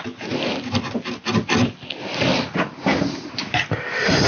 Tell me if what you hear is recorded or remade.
recorded